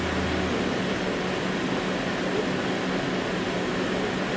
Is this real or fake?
real